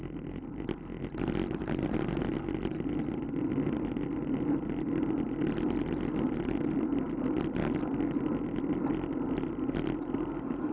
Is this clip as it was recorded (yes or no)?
yes